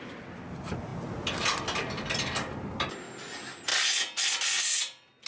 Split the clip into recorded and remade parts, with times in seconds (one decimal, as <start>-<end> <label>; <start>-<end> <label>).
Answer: 0.0-5.3 recorded